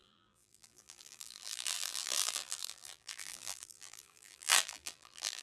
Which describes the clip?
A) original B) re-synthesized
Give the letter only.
B